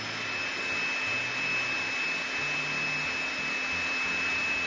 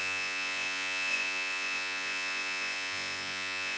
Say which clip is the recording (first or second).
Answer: first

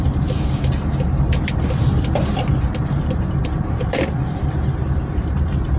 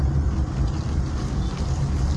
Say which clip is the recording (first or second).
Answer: second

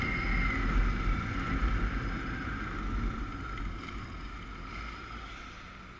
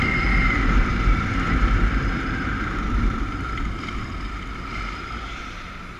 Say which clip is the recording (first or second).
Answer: first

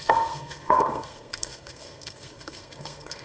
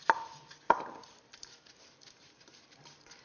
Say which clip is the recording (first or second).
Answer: second